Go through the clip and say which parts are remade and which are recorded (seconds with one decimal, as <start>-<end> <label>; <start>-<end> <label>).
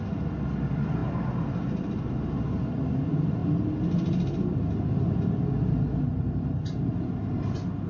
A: 0.0-7.9 recorded